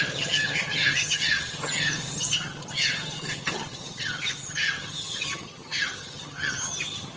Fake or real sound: fake